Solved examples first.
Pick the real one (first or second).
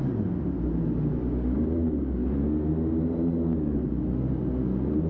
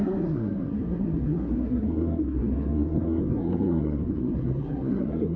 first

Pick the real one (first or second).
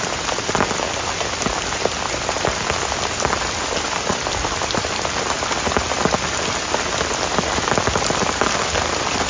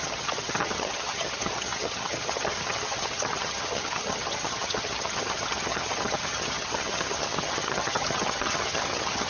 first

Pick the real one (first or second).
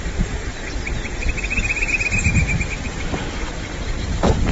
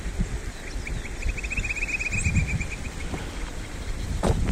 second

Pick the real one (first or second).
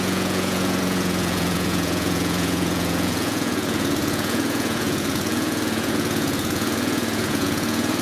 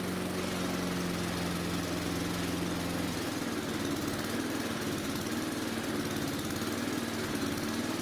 second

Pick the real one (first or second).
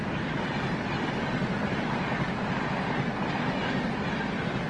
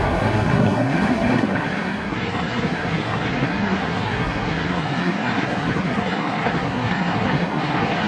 first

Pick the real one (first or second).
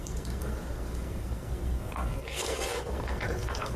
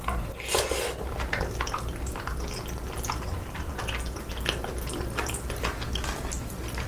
second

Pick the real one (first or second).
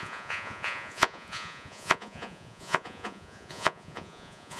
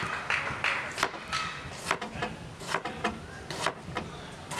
second